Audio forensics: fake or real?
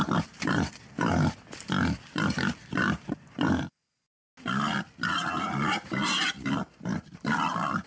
real